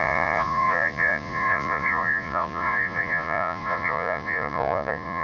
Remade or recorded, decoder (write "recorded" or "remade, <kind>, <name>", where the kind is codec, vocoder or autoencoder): remade, vocoder, Vocos